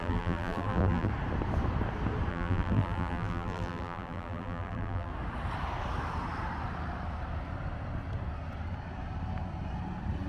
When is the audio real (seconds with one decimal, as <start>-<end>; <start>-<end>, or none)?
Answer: 1.1-2.3; 5.1-10.3